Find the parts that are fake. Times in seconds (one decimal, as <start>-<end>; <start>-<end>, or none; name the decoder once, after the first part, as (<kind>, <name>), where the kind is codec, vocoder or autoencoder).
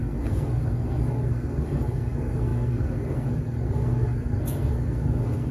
0.0-5.5 (codec, SNAC)